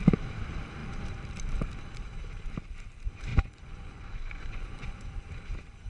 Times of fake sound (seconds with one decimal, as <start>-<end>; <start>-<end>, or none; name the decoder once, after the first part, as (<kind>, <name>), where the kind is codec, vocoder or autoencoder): 3.3-5.1 (vocoder, Vocos)